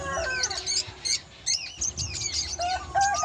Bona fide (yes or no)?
yes